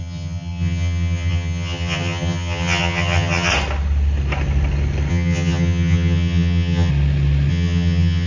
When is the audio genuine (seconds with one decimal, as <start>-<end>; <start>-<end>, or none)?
3.5-5.1; 6.9-7.5